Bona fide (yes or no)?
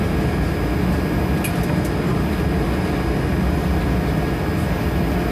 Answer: yes